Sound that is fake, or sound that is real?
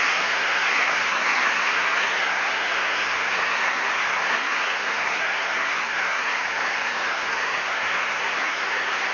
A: fake